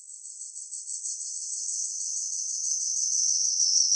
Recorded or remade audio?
remade